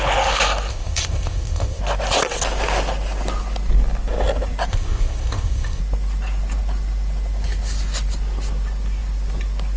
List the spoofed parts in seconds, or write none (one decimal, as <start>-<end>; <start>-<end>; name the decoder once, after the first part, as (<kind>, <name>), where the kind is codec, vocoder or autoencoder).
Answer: 0.7-1.8 (codec, ZipCodec); 4.7-5.8